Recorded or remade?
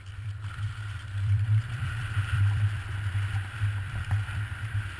remade